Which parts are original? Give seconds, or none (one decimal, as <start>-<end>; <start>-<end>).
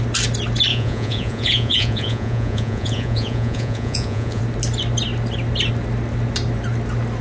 0.0-0.7; 4.4-7.2